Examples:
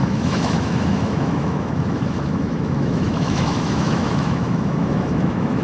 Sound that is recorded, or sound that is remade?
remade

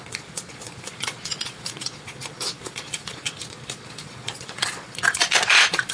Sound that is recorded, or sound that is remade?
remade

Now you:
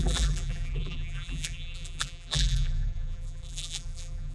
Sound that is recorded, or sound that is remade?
remade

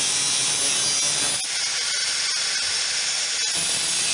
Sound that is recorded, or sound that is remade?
recorded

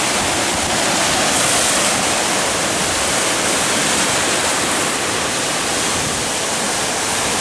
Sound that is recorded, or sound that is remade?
recorded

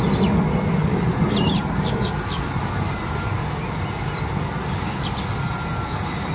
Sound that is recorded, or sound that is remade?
recorded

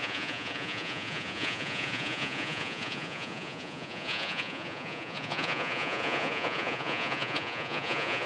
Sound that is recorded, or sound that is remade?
remade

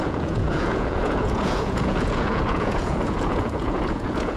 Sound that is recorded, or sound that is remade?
remade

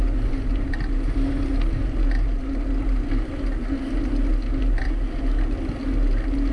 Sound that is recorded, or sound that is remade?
recorded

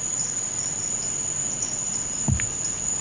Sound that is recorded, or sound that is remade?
recorded